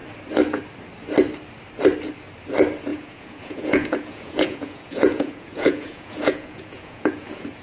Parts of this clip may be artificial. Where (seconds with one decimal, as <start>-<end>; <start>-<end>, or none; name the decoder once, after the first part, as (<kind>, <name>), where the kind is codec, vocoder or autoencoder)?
2.9-7.6 (vocoder, Vocos)